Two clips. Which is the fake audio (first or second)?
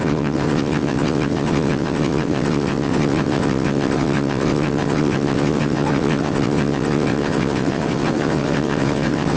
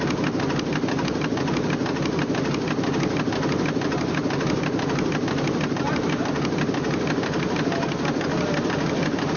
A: first